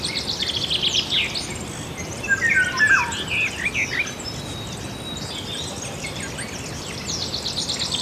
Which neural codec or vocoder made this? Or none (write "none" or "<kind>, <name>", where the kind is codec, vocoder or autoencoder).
none